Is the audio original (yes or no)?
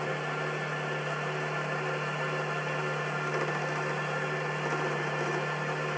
yes